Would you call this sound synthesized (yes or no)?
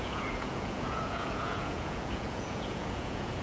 yes